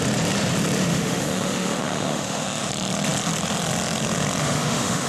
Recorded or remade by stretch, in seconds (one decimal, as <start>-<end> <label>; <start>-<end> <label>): 0.0-0.9 recorded; 0.9-2.7 remade; 2.7-4.4 recorded; 4.4-5.1 remade